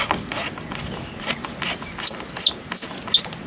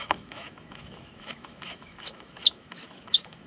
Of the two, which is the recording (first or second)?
first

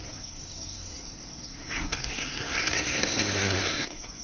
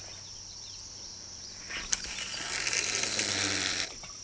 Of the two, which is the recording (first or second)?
second